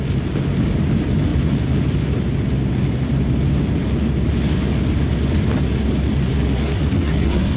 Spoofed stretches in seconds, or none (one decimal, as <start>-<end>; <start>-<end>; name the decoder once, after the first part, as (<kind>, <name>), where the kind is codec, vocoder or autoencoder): 6.3-7.6 (codec, SNAC)